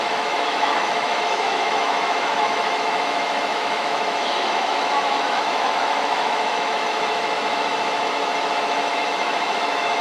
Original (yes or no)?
no